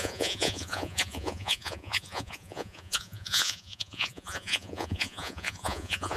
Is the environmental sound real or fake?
fake